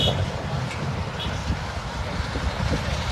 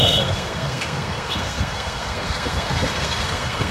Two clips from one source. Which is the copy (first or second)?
second